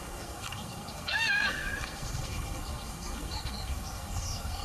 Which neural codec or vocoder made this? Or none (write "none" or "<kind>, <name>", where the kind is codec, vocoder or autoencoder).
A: codec, SNAC